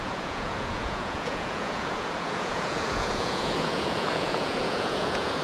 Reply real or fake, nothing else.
fake